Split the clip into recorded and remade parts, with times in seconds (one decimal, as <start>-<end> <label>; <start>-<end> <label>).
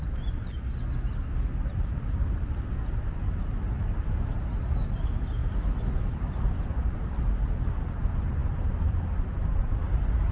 0.0-1.6 recorded; 1.6-4.2 remade; 4.2-5.4 recorded; 5.4-7.2 remade; 7.2-10.3 recorded